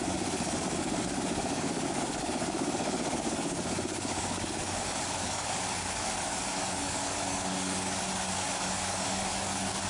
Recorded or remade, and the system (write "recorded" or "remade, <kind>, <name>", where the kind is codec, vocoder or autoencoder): remade, codec, DAC